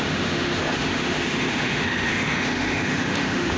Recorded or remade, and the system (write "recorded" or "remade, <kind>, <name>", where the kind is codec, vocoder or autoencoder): remade, autoencoder, DAC-VAE